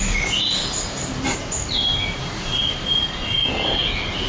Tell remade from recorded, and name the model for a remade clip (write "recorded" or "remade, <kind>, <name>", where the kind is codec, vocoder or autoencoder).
recorded